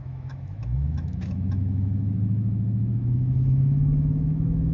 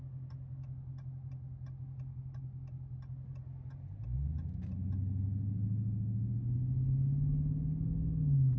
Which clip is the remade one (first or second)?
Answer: first